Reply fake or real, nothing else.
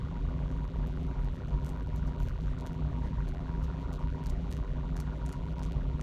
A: fake